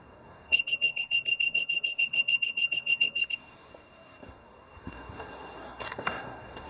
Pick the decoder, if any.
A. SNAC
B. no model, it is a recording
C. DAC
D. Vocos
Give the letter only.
A